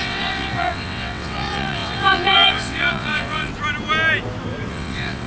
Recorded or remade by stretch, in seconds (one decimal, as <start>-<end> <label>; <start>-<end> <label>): 0.0-3.5 remade; 3.5-4.7 recorded; 4.7-5.3 remade